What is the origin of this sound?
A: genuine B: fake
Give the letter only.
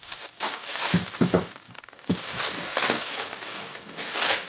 B